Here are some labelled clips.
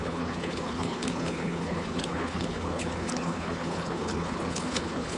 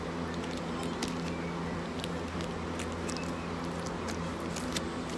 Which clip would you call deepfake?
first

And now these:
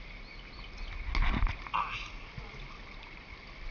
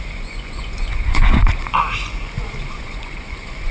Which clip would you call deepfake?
second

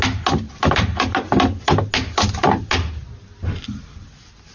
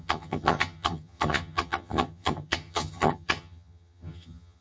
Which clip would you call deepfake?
second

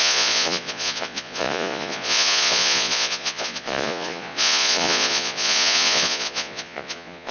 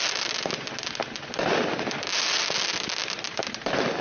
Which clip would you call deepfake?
first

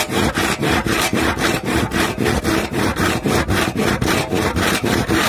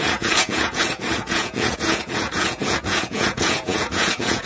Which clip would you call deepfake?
second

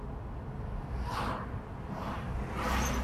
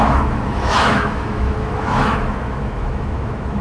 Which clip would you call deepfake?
second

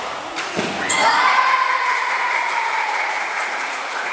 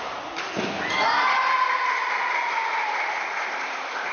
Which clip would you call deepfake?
first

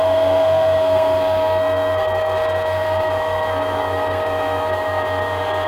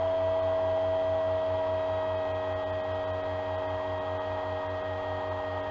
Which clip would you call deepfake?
first